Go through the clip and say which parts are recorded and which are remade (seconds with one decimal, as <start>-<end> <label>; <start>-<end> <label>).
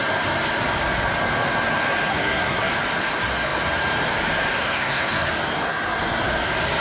0.0-2.1 recorded; 2.1-2.7 remade; 2.7-4.6 recorded; 4.6-5.3 remade; 5.3-6.8 recorded